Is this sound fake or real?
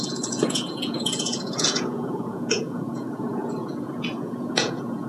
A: fake